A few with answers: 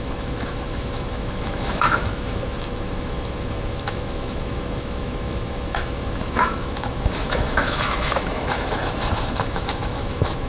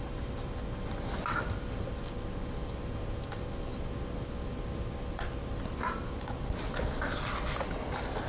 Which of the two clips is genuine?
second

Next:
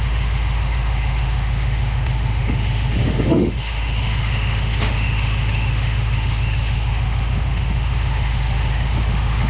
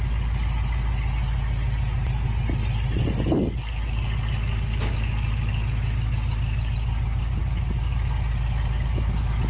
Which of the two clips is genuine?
second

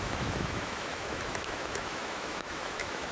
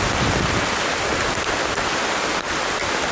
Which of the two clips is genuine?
second